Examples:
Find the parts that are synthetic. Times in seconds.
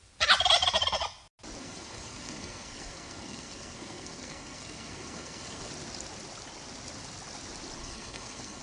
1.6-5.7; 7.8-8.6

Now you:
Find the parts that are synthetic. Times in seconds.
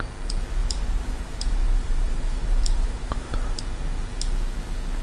0.6-3.6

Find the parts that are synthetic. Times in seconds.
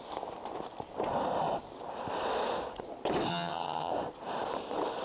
3.3-3.9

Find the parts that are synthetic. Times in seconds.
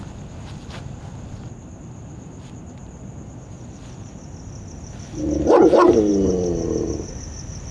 none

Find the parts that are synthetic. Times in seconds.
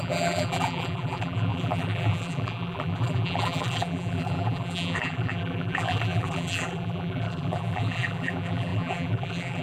0.0-9.6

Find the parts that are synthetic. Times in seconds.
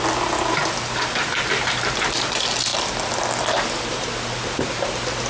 0.0-2.7; 3.6-5.3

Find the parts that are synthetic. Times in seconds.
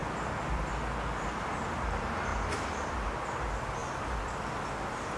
0.0-0.7; 2.3-2.9